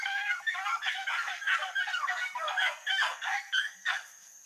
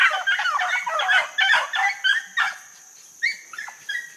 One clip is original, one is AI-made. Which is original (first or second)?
second